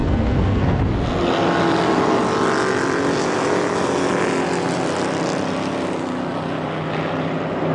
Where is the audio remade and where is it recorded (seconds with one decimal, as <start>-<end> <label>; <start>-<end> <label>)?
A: 0.0-0.8 remade; 0.8-7.7 recorded